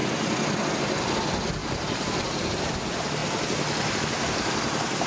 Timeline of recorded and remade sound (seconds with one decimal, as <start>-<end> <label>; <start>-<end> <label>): 0.0-1.6 recorded; 1.6-2.7 remade; 2.7-5.1 recorded

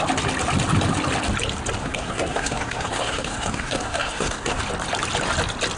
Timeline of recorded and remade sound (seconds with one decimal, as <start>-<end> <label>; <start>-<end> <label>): 0.0-1.8 recorded; 1.8-4.6 remade; 4.6-5.8 recorded

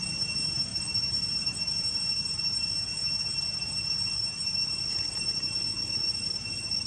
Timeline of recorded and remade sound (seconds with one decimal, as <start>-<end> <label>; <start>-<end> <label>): 0.0-0.7 recorded; 0.7-2.4 remade; 2.4-3.0 recorded; 3.0-4.1 remade; 4.1-6.9 recorded

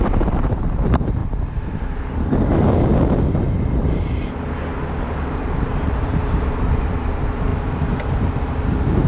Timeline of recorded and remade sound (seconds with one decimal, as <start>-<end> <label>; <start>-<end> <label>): 0.0-1.2 remade; 1.2-5.0 recorded; 5.0-9.1 remade

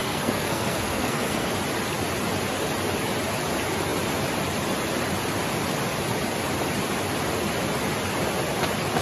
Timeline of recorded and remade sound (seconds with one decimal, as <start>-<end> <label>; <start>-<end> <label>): 0.0-1.5 remade; 1.5-9.0 recorded

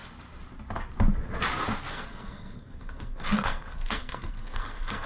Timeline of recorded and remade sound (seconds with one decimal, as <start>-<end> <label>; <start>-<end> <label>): 0.0-1.9 recorded; 1.9-5.1 remade

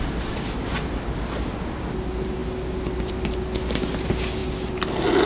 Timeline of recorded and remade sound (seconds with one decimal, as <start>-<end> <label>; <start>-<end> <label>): 0.0-5.3 recorded